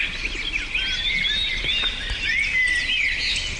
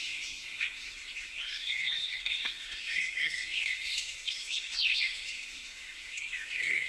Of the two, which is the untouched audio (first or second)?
first